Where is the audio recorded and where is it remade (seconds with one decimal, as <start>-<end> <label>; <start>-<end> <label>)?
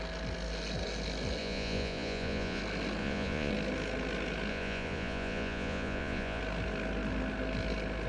0.0-1.4 recorded; 1.4-2.6 remade; 2.6-3.0 recorded; 3.0-3.5 remade; 3.5-4.5 recorded; 4.5-6.4 remade; 6.4-8.1 recorded